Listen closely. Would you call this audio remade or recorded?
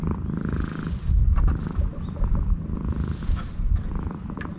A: recorded